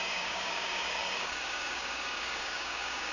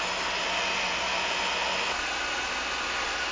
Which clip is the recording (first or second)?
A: second